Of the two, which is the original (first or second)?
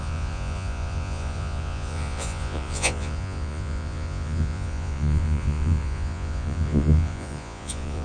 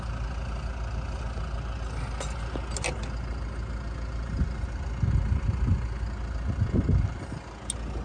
second